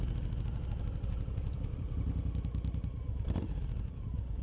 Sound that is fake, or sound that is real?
fake